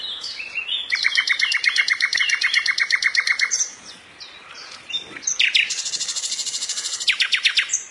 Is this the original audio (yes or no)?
no